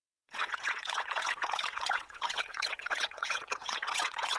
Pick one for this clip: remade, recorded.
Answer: remade